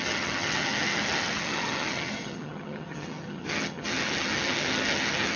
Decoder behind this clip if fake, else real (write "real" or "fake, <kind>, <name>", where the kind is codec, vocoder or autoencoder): fake, vocoder, HiFi-GAN